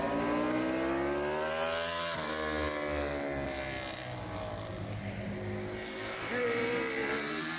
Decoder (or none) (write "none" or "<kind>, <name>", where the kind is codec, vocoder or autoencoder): none